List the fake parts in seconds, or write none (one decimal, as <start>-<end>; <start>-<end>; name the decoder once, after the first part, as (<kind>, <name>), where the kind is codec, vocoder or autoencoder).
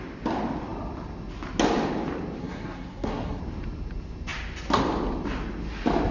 2.4-3.4 (codec, SNAC)